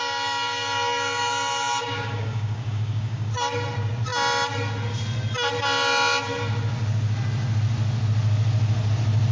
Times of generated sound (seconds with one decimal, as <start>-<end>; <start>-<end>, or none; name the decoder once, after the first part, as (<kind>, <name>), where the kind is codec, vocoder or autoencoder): 1.8-3.3 (codec, DAC)

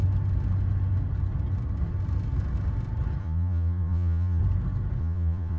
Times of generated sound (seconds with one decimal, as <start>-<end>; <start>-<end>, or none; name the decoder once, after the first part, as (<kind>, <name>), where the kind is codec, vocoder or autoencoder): 3.2-4.4 (vocoder, Vocos); 5.0-5.6